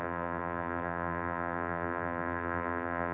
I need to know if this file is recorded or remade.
remade